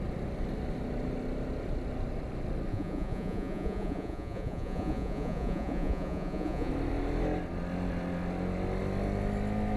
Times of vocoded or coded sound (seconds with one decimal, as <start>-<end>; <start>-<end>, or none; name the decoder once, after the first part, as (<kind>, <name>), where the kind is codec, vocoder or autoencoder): 2.7-6.7 (vocoder, Vocos)